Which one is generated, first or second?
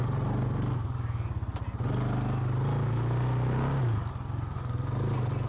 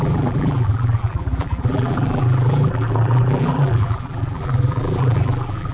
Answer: second